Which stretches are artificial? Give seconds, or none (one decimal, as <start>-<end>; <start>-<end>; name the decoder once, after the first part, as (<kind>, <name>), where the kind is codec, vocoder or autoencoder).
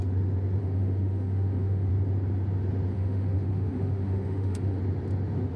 0.6-1.9 (autoencoder, DAC-VAE); 2.9-4.8